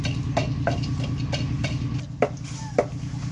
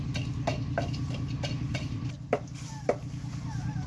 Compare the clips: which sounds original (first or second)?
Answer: first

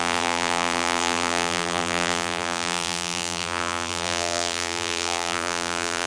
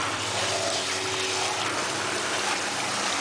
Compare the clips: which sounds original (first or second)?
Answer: second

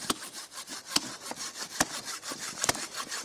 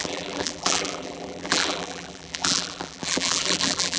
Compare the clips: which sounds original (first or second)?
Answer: first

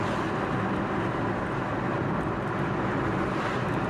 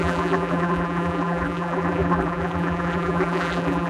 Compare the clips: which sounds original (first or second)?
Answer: first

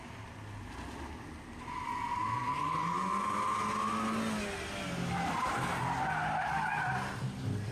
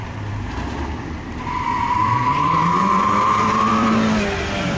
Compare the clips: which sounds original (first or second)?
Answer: first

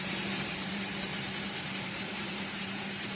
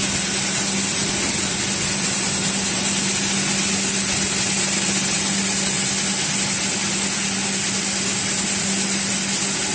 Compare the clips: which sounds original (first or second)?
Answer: second